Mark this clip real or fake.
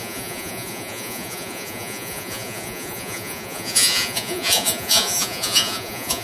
fake